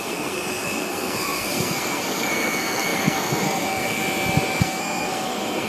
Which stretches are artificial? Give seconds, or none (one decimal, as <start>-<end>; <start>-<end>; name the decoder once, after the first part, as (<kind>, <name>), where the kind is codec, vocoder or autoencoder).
0.0-4.0 (codec, SNAC); 4.6-5.7